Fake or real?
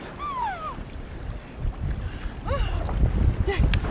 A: real